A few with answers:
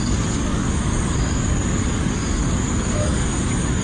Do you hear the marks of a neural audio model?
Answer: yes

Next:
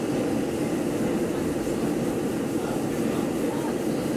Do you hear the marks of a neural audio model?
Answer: no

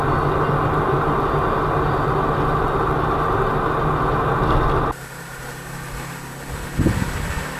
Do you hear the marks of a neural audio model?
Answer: no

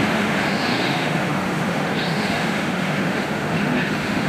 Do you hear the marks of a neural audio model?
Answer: yes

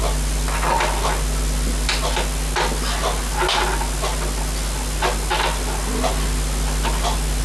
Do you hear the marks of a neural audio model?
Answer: no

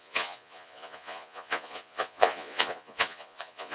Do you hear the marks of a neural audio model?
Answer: yes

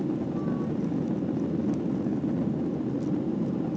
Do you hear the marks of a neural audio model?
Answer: no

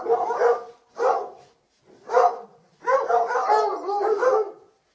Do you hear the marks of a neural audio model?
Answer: no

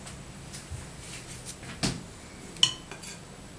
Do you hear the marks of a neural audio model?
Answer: no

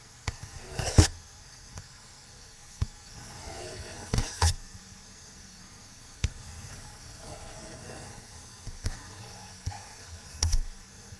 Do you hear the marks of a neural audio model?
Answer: yes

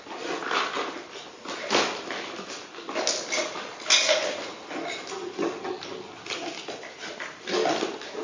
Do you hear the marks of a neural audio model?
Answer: no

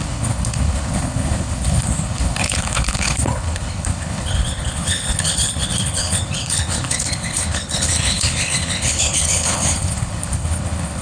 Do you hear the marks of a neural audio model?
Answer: yes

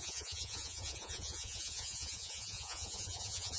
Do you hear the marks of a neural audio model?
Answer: yes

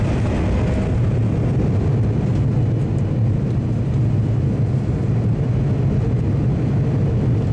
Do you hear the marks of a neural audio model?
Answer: no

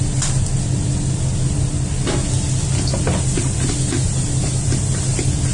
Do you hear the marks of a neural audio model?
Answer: no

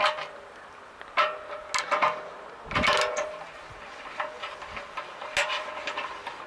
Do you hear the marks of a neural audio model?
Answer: no